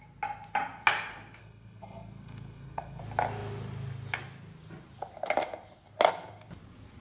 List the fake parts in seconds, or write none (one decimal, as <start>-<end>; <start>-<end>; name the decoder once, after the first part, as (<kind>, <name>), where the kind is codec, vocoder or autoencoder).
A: 1.4-3.0 (codec, SNAC)